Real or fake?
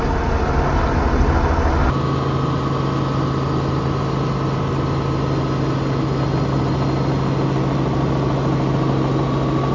real